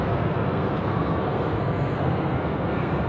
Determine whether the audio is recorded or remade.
remade